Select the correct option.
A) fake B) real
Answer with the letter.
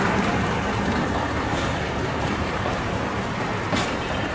A